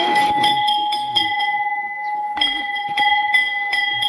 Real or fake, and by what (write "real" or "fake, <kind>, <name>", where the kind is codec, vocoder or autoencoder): fake, autoencoder, DAC-VAE